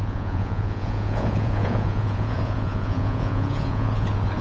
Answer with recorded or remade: remade